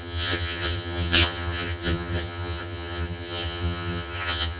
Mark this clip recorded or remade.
remade